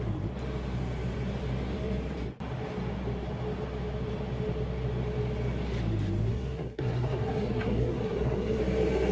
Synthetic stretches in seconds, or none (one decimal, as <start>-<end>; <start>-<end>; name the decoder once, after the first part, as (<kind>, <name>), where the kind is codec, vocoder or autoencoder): 6.3-8.6 (codec, SNAC)